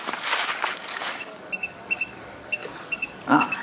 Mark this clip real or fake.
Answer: fake